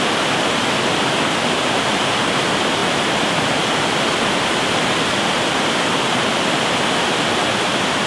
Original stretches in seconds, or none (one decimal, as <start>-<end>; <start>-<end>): none